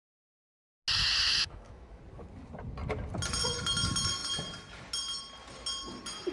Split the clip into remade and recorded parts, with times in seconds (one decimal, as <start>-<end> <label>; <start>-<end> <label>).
0.0-1.3 recorded; 1.3-2.0 remade; 2.0-6.3 recorded